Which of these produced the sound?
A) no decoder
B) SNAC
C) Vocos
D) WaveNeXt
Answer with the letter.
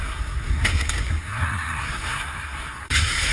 B